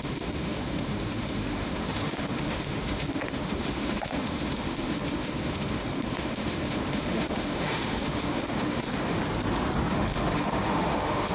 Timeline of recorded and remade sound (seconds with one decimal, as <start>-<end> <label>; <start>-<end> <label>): 0.0-9.2 remade; 9.2-9.9 recorded; 9.9-11.3 remade

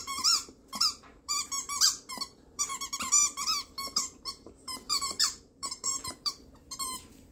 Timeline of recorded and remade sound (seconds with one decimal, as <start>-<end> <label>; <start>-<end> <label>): 0.0-7.3 remade

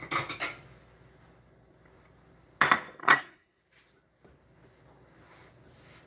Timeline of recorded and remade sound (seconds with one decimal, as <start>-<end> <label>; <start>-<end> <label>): 0.0-3.0 recorded; 3.0-3.6 remade; 3.6-6.1 recorded

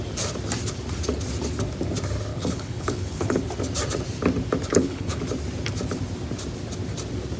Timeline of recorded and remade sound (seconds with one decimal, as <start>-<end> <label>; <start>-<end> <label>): 0.0-2.3 recorded; 2.3-3.4 remade; 3.4-4.7 recorded; 4.7-5.2 remade; 5.2-7.4 recorded

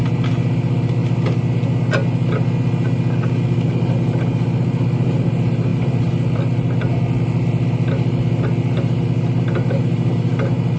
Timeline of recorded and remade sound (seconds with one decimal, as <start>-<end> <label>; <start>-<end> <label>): 0.0-10.8 recorded

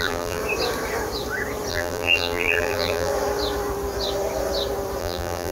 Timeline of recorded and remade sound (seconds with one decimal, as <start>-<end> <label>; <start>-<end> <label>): 0.0-0.4 remade; 0.4-1.7 recorded; 1.7-3.1 remade; 3.1-5.0 recorded; 5.0-5.5 remade